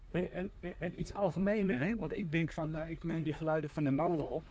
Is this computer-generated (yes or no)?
yes